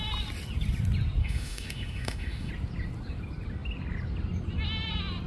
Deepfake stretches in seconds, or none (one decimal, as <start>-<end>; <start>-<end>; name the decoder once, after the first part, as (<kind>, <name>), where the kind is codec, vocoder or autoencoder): 1.2-2.5 (autoencoder, DAC-VAE)